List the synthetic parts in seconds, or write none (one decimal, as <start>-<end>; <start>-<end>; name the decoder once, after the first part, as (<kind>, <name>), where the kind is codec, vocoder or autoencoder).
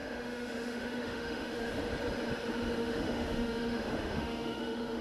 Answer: 0.0-1.7 (autoencoder, DAC-VAE); 2.8-5.0